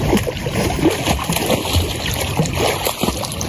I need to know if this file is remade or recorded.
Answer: recorded